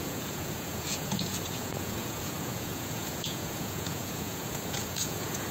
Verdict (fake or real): fake